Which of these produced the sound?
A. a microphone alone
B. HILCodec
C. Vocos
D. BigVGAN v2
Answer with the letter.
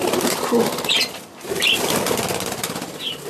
A